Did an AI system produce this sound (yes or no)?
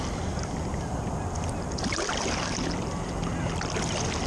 no